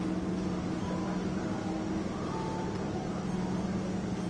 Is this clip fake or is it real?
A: real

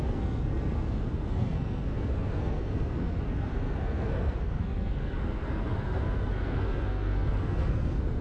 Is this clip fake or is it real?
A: fake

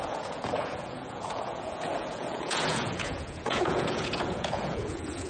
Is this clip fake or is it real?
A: fake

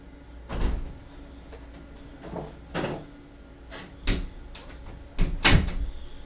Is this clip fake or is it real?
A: real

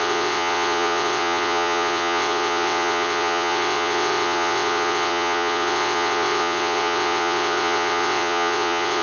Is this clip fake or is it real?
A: fake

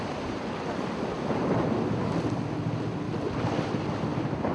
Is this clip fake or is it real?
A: real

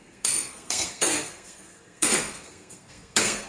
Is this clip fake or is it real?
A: fake